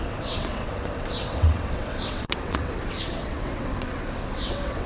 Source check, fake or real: fake